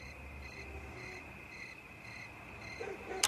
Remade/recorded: recorded